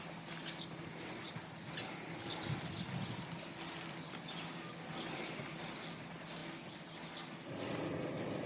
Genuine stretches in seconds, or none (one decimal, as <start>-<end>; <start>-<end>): 0.0-8.5